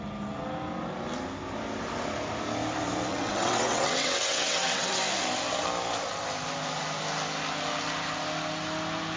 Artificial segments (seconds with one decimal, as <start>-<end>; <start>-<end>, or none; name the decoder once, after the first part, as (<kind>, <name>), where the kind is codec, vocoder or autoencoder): 3.1-5.0 (vocoder, WaveNeXt)